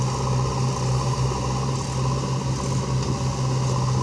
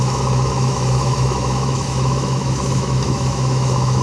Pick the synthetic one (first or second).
second